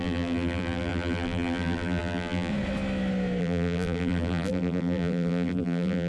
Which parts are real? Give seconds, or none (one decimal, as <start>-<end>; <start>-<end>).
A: 2.5-3.4